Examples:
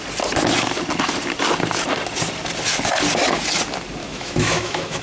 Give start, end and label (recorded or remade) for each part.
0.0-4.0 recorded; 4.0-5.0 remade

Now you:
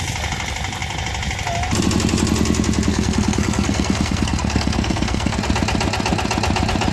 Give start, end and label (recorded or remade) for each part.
0.0-2.9 recorded; 2.9-5.4 remade; 5.4-6.9 recorded

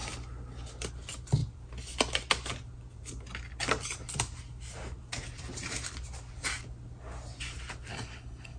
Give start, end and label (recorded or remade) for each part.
0.0-7.9 recorded; 7.9-8.6 remade

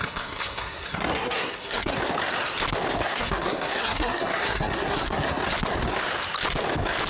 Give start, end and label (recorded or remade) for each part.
0.0-2.0 remade; 2.0-3.0 recorded; 3.0-5.4 remade; 5.4-7.1 recorded

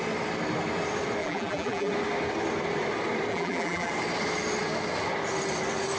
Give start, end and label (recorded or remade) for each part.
0.0-1.2 recorded; 1.2-1.9 remade; 1.9-3.3 recorded; 3.3-3.9 remade; 3.9-6.0 recorded

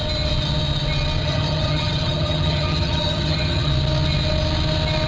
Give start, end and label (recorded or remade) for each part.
0.0-1.2 recorded; 1.2-3.7 remade; 3.7-5.1 recorded

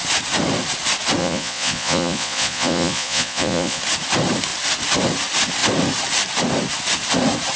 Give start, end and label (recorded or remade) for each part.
0.0-1.2 recorded; 1.2-3.8 remade; 3.8-7.6 recorded